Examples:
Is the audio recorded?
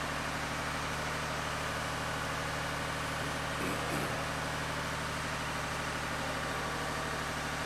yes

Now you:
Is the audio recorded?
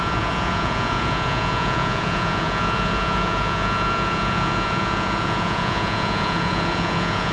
no